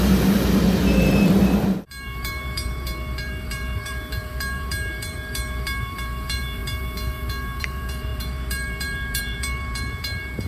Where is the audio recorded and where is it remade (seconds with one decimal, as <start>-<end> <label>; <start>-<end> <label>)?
0.0-10.5 remade